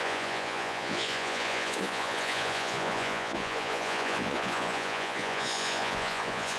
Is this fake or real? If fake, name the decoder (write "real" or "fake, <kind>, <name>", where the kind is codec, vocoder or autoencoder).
fake, vocoder, Vocos